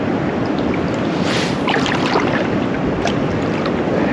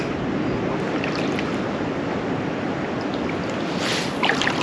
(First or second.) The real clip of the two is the second